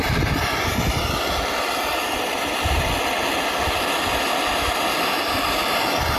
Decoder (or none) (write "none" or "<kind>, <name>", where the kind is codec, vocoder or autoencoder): none